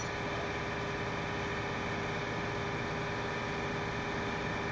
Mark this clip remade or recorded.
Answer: recorded